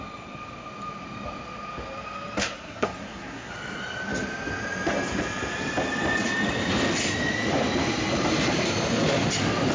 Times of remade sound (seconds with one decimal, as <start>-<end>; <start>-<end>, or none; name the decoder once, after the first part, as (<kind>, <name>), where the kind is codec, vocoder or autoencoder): 2.4-3.5 (codec, SNAC)